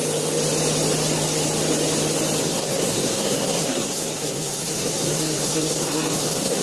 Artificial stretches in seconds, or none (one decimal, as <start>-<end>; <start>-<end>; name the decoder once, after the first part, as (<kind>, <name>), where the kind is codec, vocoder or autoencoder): 2.4-6.6 (codec, SNAC)